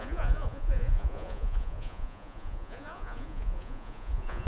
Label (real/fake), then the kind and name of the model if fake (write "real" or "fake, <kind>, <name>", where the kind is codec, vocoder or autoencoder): fake, vocoder, Vocos